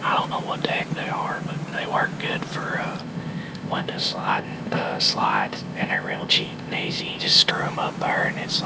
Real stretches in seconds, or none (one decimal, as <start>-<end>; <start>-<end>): 0.0-3.0; 7.5-8.7